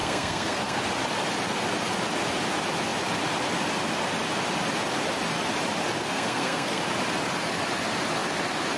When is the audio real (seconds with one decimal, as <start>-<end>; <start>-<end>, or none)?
0.8-6.0; 6.8-8.8